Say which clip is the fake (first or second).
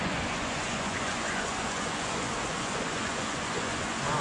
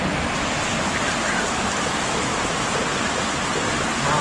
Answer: first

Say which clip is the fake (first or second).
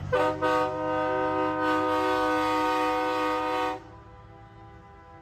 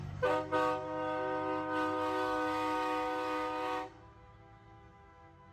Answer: second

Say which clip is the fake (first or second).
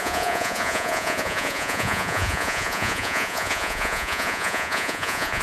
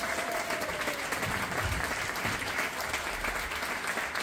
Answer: first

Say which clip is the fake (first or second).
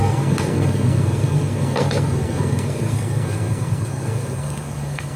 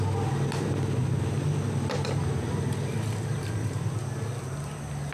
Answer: first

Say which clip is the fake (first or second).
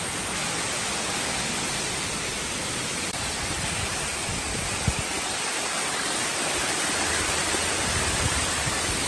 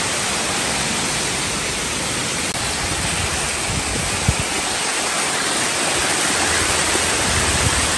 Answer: first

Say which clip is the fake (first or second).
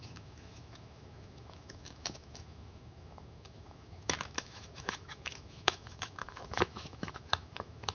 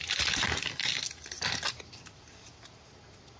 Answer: first